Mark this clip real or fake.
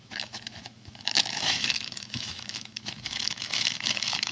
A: fake